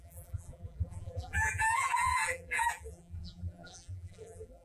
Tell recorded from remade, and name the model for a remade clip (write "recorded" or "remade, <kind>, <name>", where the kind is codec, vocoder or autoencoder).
remade, vocoder, BigVGAN v2